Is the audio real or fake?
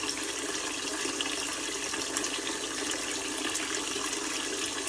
real